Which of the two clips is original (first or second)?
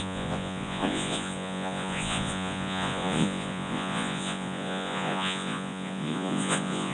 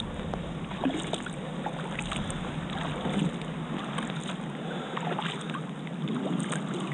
second